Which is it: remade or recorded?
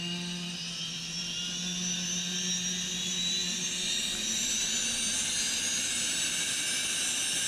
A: recorded